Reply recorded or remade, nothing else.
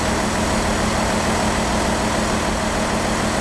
recorded